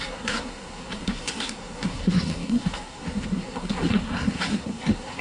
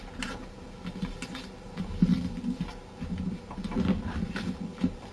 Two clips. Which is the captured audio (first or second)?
second